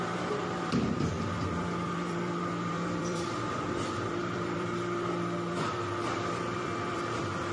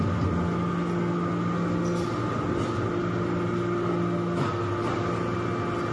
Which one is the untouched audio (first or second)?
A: second